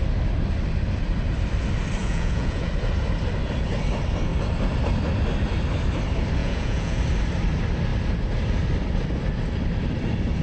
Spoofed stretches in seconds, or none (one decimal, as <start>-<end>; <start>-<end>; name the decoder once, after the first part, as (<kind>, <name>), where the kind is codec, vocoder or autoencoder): 2.0-2.7 (vocoder, Vocos); 6.4-7.0